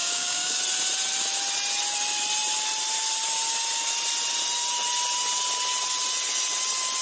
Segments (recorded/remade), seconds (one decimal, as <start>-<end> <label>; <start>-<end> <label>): 0.0-0.6 remade; 0.6-7.0 recorded